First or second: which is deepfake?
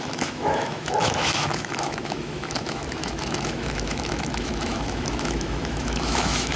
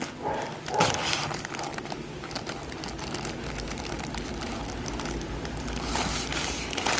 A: first